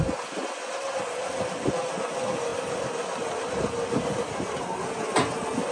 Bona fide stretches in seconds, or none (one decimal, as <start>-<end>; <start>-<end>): 0.0-5.7